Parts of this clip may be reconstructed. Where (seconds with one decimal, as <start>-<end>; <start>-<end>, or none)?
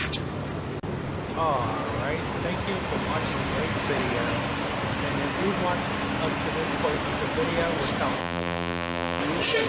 8.2-9.2